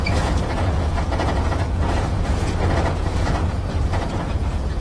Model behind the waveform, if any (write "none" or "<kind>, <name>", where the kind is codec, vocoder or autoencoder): vocoder, Vocos